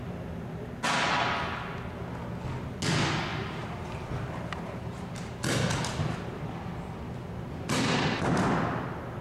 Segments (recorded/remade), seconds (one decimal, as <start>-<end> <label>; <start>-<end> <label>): 0.0-3.3 recorded; 3.3-6.2 remade; 6.2-9.2 recorded